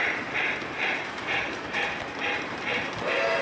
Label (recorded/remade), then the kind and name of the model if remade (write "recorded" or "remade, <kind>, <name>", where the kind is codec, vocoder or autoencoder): remade, vocoder, BigVGAN v2